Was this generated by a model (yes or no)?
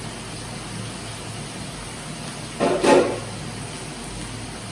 no